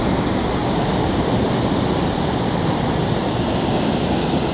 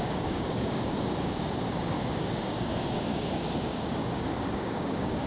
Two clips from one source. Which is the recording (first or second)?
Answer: first